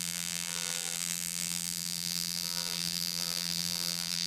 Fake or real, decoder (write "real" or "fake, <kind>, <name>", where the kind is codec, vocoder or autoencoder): fake, vocoder, BigVGAN v2